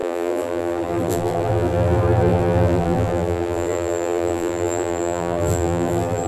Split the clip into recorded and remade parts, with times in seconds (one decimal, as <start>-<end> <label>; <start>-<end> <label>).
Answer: 0.0-6.3 remade